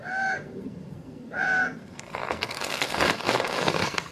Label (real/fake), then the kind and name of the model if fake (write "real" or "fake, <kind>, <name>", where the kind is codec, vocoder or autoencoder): fake, codec, SNAC